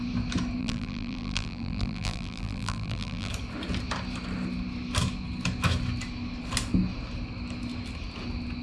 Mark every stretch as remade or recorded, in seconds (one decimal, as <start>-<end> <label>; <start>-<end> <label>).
0.0-0.6 recorded; 0.6-3.3 remade; 3.3-8.6 recorded